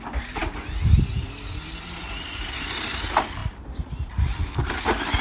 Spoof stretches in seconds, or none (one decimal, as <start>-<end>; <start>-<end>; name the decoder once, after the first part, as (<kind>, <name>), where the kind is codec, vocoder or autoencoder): 3.4-3.9 (vocoder, BigVGAN v2)